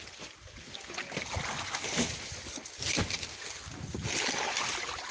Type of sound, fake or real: real